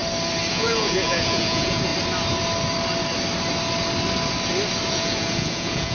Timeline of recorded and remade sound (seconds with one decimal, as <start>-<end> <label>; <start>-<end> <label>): 0.0-0.5 recorded; 0.5-1.9 remade; 1.9-4.9 recorded; 4.9-5.9 remade